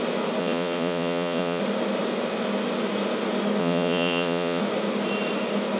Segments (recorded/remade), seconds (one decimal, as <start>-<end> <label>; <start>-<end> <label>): 0.0-0.4 recorded; 0.4-1.6 remade; 1.6-3.6 recorded; 3.6-4.6 remade; 4.6-5.8 recorded